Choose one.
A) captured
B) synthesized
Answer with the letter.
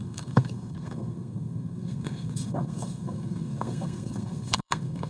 B